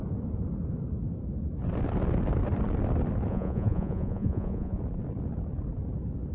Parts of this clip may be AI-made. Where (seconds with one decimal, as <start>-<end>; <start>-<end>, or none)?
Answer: 3.3-4.8